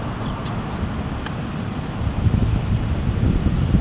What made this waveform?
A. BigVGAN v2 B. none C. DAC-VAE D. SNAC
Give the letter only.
B